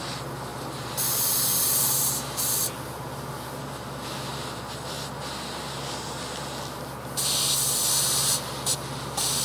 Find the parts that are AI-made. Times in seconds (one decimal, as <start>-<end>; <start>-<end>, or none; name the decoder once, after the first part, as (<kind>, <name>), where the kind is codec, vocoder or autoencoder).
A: none